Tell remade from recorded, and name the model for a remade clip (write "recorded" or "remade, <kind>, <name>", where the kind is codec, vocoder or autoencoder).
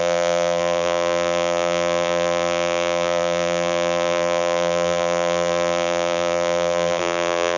remade, vocoder, BigVGAN v2